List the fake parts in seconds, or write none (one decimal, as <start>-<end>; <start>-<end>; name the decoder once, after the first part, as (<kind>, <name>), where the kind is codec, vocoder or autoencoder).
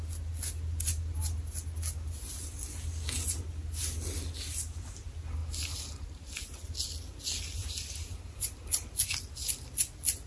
7.6-8.6 (vocoder, BigVGAN v2)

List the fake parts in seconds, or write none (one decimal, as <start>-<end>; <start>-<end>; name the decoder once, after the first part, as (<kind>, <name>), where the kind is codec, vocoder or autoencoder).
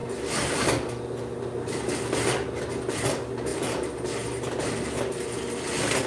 none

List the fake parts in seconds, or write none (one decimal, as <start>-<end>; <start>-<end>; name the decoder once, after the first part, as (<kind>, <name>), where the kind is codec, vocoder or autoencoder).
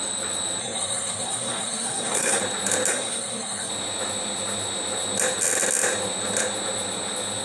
0.6-2.4 (codec, SNAC); 2.9-3.7